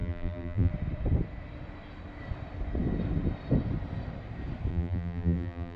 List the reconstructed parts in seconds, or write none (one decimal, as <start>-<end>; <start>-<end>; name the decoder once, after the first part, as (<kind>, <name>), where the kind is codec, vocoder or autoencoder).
0.0-0.7 (vocoder, BigVGAN v2); 4.7-5.8